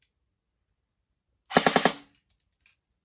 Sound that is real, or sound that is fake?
real